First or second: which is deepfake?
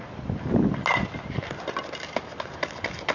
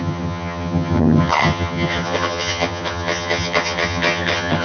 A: second